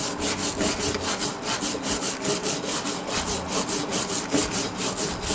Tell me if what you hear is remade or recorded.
recorded